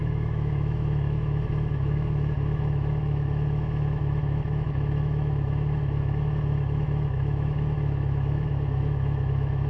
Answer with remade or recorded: remade